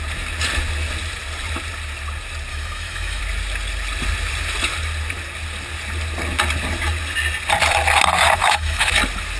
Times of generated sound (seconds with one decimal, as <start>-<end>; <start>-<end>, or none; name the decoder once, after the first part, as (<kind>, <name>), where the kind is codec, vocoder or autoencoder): 2.5-3.2 (autoencoder, DAC-VAE); 8.4-9.0